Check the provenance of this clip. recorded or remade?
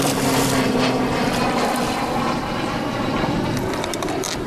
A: remade